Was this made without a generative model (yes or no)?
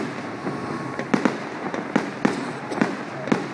yes